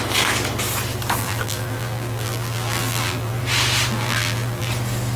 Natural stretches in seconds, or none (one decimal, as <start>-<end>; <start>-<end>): 0.0-1.2; 3.4-3.9; 4.7-5.2